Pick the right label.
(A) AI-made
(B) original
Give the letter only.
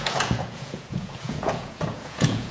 A